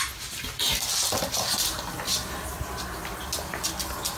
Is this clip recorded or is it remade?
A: recorded